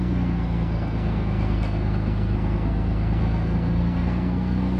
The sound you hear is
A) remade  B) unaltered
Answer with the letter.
A